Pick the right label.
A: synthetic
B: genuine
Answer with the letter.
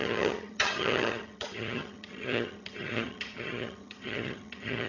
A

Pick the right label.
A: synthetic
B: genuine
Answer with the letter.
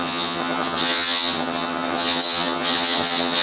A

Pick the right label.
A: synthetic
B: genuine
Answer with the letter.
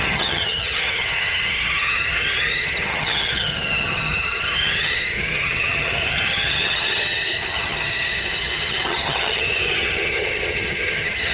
A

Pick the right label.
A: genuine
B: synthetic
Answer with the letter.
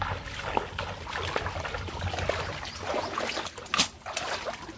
A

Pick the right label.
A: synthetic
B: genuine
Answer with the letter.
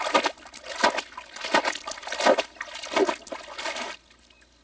B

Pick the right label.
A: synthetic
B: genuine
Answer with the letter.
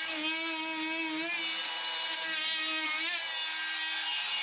B